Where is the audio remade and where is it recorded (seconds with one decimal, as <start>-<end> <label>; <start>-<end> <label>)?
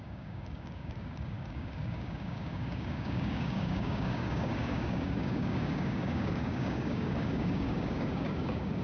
0.0-8.8 remade